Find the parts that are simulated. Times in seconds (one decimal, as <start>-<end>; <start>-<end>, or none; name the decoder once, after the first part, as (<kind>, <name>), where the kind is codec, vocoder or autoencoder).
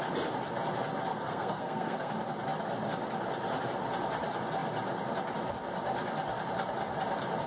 1.1-2.1 (codec, SNAC)